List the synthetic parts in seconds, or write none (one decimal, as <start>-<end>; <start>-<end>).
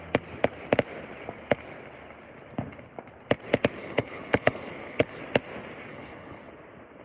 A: 3.8-5.2; 5.9-6.5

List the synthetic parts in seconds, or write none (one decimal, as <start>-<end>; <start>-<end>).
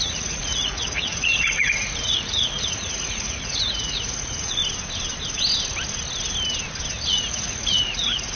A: 0.0-4.6; 7.1-8.4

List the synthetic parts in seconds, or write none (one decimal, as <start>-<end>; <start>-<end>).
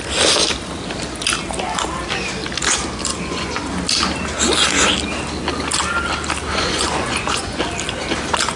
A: 3.1-3.7; 6.5-7.6